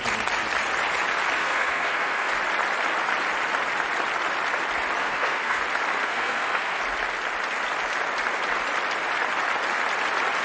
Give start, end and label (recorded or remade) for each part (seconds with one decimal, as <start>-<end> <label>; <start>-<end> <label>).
0.0-1.4 recorded; 1.4-2.3 remade; 2.3-5.0 recorded; 5.0-5.6 remade; 5.6-6.0 recorded; 6.0-6.8 remade; 6.8-10.4 recorded

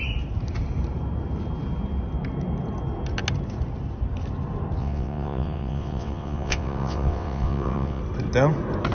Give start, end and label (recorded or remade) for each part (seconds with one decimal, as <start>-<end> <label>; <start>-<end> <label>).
0.0-4.8 recorded; 4.8-8.0 remade; 8.0-8.9 recorded

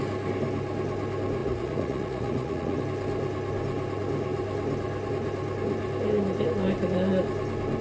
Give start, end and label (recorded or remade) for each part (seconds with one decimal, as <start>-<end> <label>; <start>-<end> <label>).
0.0-1.4 recorded; 1.4-2.8 remade; 2.8-7.8 recorded

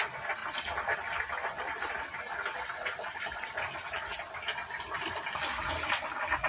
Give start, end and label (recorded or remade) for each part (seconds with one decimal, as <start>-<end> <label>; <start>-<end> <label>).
0.0-6.5 recorded